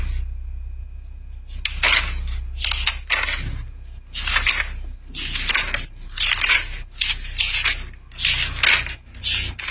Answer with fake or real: real